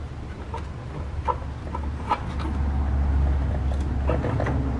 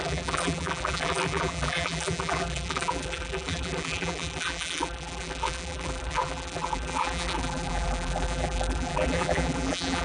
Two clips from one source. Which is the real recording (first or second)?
first